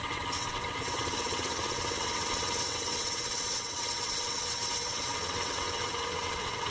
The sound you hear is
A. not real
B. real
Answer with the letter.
A